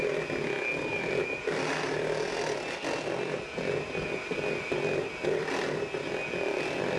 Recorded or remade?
recorded